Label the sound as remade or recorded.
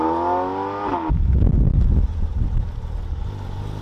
recorded